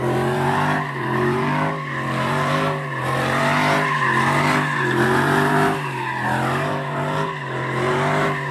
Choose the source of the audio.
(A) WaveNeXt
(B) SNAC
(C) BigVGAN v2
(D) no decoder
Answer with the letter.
C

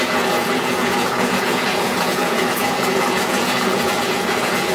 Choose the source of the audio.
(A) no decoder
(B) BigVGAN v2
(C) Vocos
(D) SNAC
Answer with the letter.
C